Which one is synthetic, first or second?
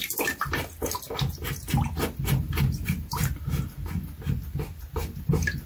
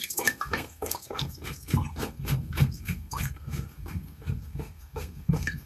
second